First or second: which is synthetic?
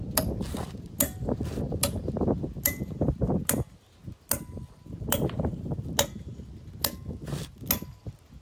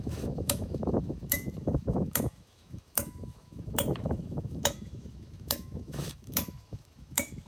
second